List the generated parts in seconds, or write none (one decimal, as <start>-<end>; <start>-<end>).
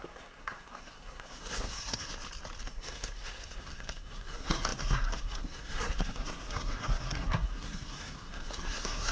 0.0-2.1; 2.7-9.1